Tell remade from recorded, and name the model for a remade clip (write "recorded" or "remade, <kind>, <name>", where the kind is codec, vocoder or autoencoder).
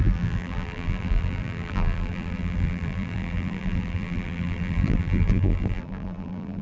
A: remade, vocoder, BigVGAN v2